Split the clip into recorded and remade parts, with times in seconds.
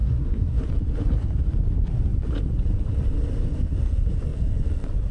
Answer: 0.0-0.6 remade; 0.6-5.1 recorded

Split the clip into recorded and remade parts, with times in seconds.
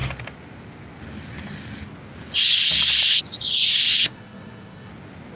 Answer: 0.0-4.0 recorded; 4.0-4.9 remade; 4.9-5.4 recorded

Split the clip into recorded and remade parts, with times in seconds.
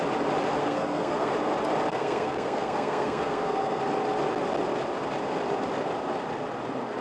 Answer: 0.0-0.6 recorded; 0.6-1.3 remade; 1.3-1.9 recorded; 1.9-3.8 remade; 3.8-7.0 recorded